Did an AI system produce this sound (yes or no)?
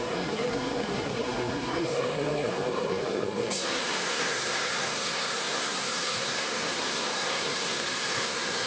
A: yes